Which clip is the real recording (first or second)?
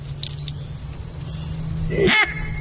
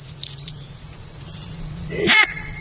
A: first